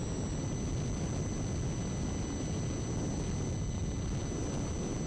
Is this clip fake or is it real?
real